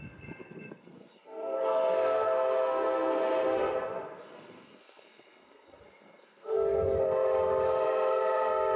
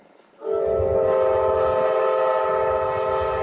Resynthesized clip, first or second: first